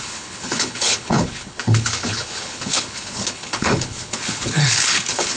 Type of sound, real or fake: fake